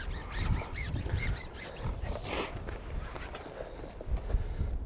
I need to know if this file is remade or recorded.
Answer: recorded